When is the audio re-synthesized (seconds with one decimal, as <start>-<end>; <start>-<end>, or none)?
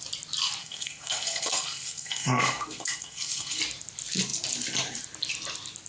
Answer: 0.6-3.6